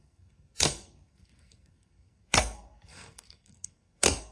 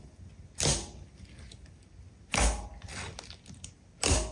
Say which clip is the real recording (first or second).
second